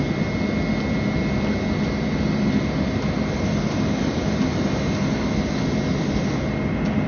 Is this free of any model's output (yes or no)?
yes